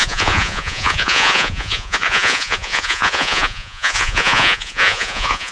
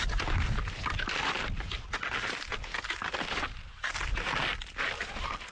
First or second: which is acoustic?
second